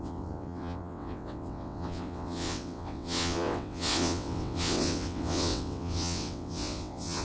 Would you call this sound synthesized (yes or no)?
yes